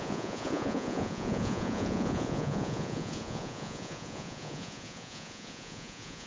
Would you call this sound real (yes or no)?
no